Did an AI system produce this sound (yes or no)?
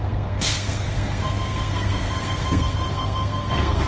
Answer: yes